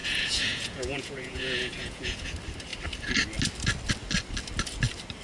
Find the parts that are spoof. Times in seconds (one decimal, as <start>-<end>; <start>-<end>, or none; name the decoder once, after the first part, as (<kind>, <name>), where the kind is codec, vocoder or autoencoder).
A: 0.0-2.3 (vocoder, Vocos)